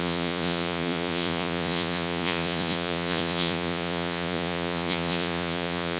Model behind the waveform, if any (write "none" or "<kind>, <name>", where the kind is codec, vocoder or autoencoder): vocoder, Vocos